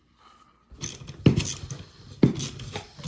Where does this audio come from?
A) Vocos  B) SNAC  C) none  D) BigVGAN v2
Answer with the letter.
C